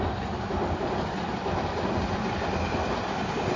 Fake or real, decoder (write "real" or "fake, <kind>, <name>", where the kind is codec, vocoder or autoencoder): real